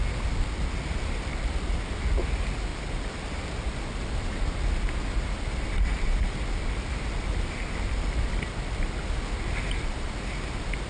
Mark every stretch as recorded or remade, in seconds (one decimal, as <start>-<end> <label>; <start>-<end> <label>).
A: 0.0-10.9 recorded